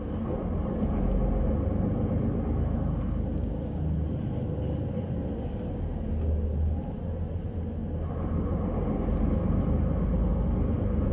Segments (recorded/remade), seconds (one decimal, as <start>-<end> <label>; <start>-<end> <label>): 0.0-3.3 recorded; 3.3-3.8 remade; 3.8-11.1 recorded